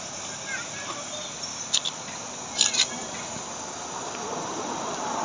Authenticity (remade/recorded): recorded